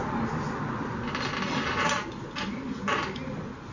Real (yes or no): yes